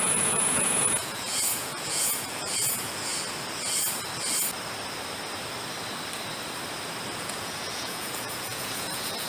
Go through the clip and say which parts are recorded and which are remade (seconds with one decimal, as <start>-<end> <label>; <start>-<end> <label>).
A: 0.0-3.1 remade; 3.1-7.2 recorded; 7.2-9.3 remade